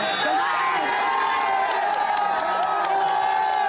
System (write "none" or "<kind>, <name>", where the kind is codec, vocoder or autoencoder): none